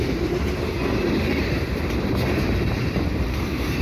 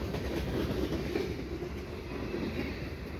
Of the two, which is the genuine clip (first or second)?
second